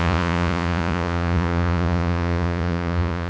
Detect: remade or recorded remade